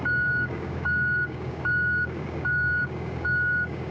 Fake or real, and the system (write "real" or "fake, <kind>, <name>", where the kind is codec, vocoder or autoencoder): fake, codec, DAC